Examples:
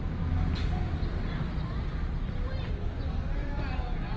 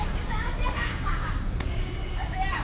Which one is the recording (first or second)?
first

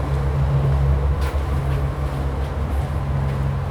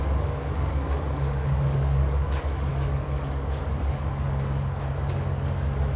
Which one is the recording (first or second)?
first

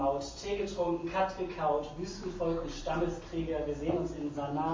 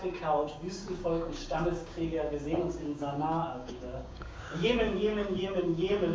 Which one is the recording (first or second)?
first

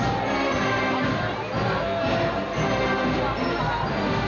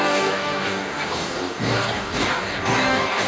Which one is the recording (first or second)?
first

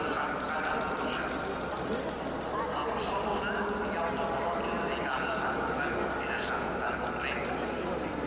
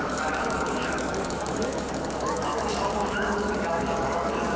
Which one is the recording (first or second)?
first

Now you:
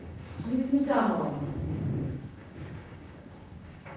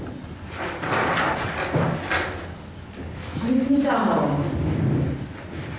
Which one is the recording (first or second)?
second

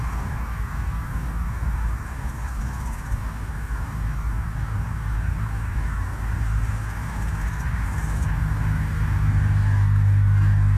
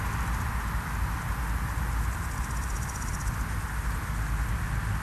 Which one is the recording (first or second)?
second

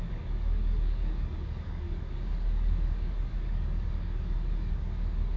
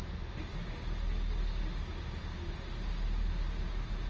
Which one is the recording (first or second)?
second